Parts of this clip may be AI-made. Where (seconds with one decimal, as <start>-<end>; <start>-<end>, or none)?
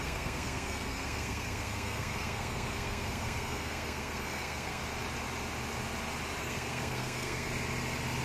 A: 0.0-4.8; 6.4-7.5